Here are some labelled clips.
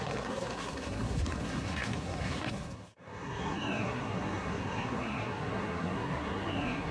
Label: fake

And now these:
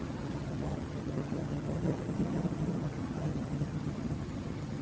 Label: fake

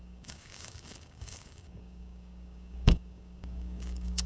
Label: fake